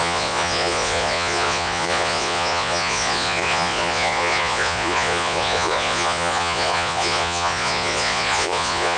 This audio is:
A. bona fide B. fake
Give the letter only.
B